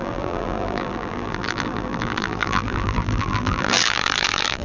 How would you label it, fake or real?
fake